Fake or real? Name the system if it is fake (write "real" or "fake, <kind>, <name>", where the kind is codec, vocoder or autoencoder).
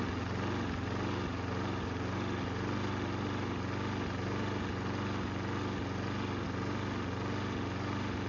real